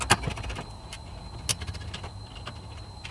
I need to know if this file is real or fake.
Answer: real